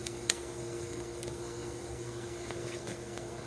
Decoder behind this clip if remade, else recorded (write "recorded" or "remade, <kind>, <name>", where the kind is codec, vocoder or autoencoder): remade, codec, SNAC